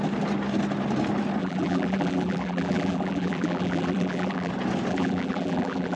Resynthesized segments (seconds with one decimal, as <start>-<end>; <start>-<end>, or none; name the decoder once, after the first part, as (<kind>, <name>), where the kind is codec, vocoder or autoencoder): 1.4-4.5 (vocoder, BigVGAN v2); 4.9-6.0